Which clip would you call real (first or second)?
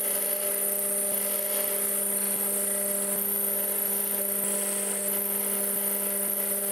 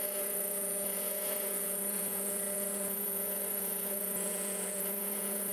first